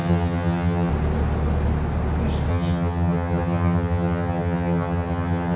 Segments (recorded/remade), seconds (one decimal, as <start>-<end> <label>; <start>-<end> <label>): 0.0-0.9 remade; 0.9-2.5 recorded; 2.5-5.6 remade